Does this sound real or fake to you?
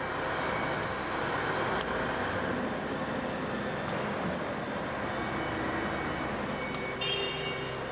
real